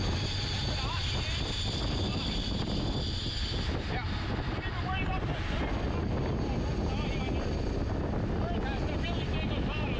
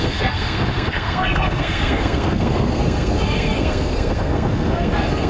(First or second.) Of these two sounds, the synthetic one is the second